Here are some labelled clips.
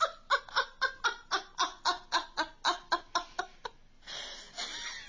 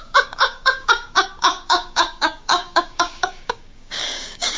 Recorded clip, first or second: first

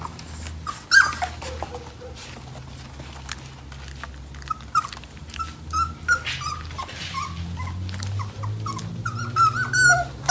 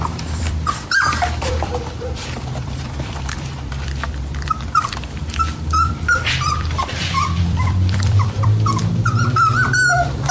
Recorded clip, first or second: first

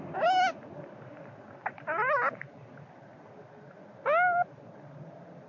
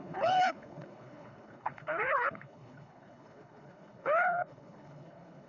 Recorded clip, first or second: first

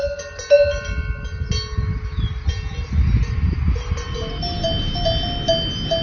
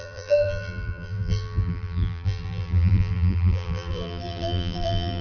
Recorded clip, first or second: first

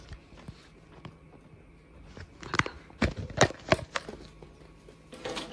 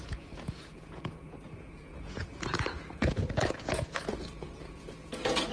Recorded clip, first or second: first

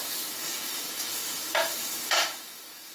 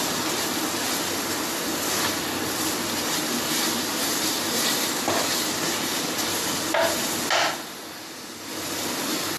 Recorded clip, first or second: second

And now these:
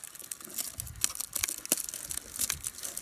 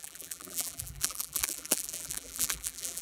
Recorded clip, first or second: first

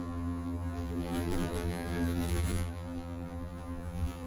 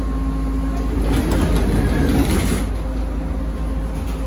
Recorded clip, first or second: second